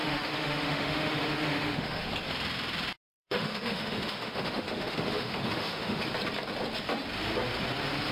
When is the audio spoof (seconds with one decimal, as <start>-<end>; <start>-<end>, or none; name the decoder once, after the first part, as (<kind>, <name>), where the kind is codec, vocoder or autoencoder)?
0.0-2.1 (autoencoder, DAC-VAE); 3.1-6.0